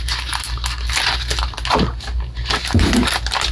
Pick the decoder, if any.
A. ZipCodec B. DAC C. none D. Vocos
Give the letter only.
C